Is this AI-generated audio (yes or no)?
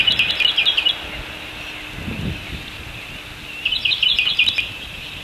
no